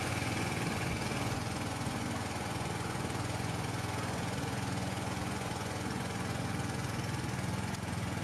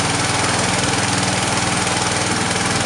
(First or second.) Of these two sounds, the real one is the second